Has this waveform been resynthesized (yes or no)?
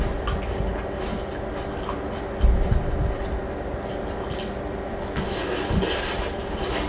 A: no